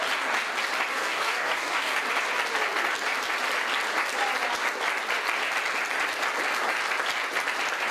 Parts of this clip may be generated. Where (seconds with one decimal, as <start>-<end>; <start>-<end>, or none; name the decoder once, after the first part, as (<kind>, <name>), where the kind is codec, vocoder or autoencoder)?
0.9-2.0 (codec, DAC)